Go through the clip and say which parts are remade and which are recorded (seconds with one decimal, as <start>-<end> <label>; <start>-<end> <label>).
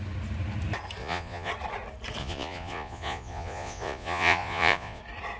0.0-1.0 recorded; 1.0-1.5 remade; 1.5-2.2 recorded; 2.2-5.0 remade; 5.0-5.4 recorded